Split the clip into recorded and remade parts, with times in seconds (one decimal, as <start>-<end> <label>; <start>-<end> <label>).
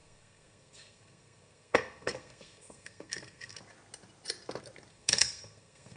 0.0-3.6 remade; 3.6-4.9 recorded; 4.9-6.0 remade